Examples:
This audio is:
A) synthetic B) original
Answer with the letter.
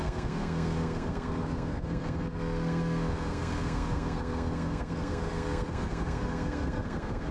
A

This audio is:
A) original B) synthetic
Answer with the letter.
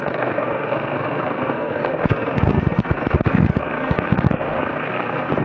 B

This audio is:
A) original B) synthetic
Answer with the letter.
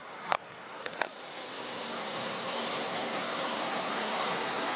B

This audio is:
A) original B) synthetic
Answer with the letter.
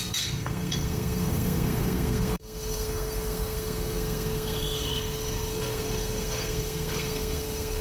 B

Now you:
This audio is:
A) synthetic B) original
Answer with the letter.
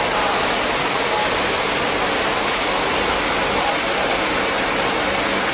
B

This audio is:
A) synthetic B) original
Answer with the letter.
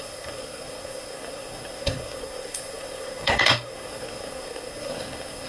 A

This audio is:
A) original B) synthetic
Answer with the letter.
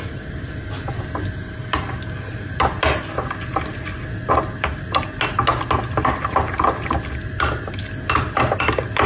A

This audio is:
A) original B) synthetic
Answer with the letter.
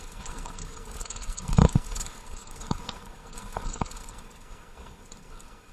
B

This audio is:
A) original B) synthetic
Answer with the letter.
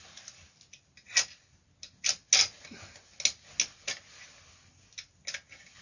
A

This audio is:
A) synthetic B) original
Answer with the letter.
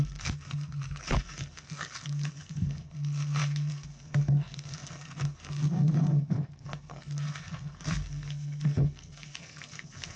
A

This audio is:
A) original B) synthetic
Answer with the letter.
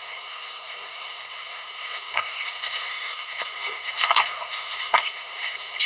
B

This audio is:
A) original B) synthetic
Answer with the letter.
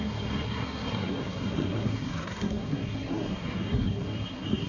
B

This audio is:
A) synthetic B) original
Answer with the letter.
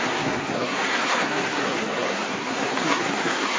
A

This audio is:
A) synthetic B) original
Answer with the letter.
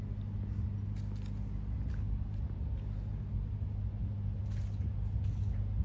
B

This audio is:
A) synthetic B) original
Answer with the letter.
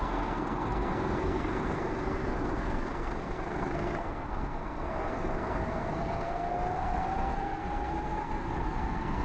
A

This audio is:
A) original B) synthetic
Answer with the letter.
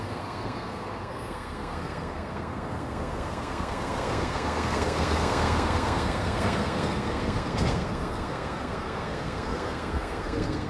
B